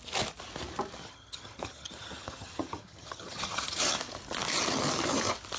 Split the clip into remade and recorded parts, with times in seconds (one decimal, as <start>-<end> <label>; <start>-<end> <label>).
0.0-1.0 recorded; 1.0-3.9 remade; 3.9-5.6 recorded